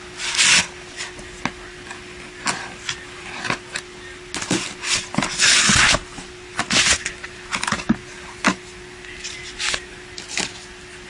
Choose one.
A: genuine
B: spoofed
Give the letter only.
A